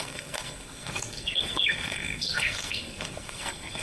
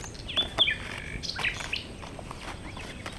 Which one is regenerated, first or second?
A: first